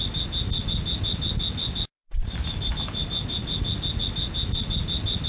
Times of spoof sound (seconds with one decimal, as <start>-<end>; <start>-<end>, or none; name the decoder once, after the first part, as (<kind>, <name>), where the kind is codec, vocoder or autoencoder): none